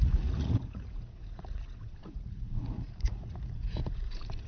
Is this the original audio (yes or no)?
no